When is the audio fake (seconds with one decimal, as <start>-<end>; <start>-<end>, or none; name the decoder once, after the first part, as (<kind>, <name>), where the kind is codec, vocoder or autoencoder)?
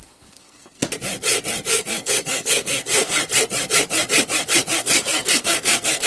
0.0-0.8 (codec, SNAC); 1.7-3.2; 4.8-6.1